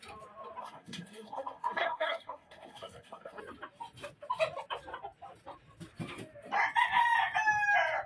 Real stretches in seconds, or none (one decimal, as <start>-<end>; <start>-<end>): 0.0-0.6; 3.4-8.1